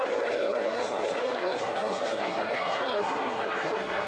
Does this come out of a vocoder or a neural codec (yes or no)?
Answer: yes